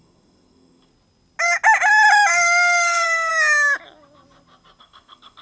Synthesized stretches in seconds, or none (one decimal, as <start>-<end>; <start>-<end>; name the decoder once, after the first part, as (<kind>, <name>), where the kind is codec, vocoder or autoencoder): 0.0-0.9 (codec, SNAC); 2.3-3.3; 4.8-5.4